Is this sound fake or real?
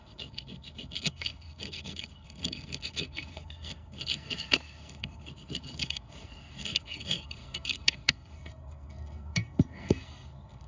fake